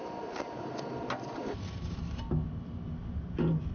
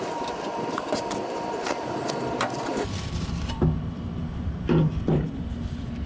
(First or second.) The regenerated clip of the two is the second